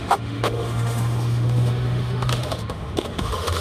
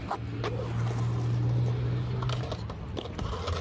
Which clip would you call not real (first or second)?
first